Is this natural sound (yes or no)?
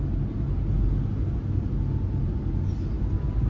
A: yes